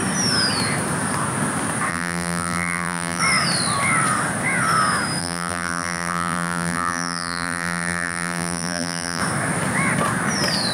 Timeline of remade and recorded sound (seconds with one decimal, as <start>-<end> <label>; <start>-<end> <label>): 0.0-1.9 recorded; 1.9-3.2 remade; 3.2-5.2 recorded; 5.2-9.2 remade; 9.2-10.7 recorded